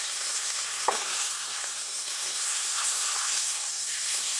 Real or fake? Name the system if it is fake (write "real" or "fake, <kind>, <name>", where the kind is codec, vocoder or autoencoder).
fake, codec, SNAC